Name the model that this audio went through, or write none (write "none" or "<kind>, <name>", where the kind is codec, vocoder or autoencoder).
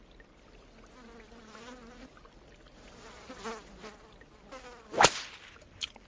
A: none